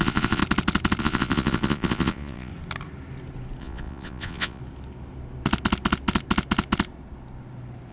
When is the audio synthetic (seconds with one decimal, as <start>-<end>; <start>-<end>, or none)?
0.0-0.4; 1.0-2.5; 3.6-4.6

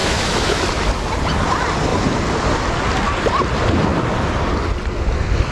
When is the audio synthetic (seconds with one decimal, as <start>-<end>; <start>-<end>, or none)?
0.0-0.6